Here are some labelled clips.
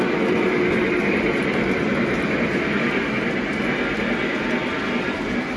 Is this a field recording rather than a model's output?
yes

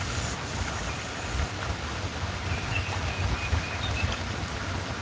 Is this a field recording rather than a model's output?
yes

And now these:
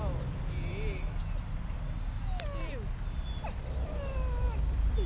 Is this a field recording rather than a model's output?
no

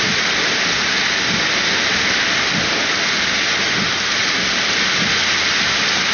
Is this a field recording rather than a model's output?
yes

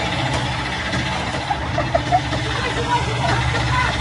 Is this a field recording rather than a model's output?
no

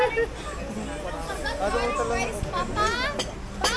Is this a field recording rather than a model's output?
yes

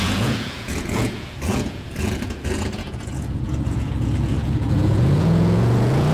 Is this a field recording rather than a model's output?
no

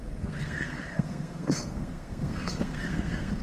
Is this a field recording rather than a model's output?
no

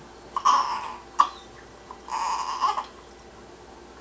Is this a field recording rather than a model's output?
yes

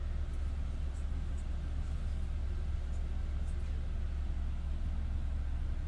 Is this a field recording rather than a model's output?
yes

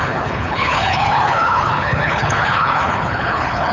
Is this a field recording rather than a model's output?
no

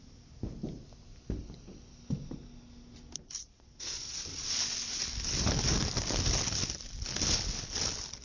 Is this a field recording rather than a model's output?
yes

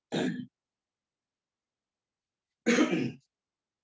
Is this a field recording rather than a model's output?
yes